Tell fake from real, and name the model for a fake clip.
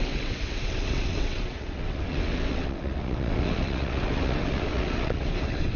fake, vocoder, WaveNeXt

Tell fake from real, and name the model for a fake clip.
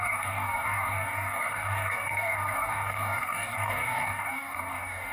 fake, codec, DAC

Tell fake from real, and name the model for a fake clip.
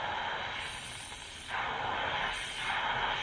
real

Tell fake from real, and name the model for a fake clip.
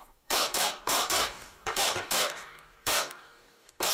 fake, codec, DAC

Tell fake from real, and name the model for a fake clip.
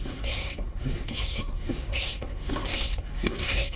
fake, codec, SNAC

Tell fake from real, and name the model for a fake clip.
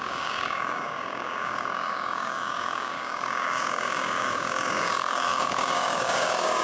fake, codec, DAC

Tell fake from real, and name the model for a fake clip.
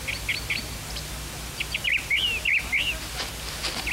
real